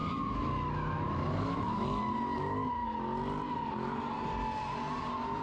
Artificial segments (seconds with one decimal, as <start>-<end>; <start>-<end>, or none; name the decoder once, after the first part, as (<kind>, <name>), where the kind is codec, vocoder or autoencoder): 0.0-2.0 (autoencoder, DAC-VAE)